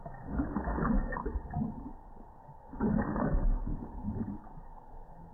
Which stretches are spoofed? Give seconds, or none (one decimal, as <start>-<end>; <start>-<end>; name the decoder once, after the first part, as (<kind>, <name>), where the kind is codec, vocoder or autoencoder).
0.0-1.2 (codec, DAC); 2.6-3.7; 4.4-5.3

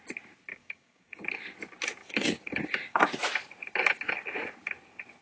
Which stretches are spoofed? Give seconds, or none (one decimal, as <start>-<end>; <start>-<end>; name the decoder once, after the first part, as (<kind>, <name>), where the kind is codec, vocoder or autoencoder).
0.5-1.3 (codec, DAC); 2.0-3.2

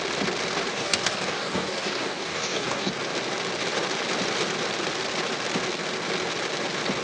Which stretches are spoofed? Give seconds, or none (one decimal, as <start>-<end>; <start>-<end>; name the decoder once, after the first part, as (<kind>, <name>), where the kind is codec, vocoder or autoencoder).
0.7-2.9 (codec, DAC)

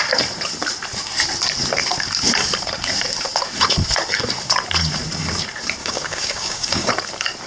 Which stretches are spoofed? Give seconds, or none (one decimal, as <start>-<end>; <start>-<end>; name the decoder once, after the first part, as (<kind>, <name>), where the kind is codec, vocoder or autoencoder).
5.8-6.9 (codec, DAC)